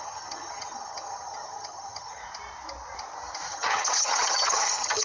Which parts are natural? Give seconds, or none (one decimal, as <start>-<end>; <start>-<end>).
2.2-3.5